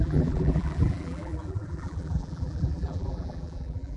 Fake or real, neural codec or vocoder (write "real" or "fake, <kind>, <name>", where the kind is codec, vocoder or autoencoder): fake, vocoder, BigVGAN v2